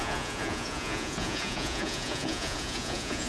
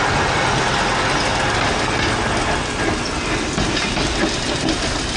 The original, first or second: second